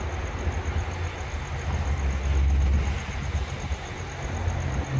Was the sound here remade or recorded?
recorded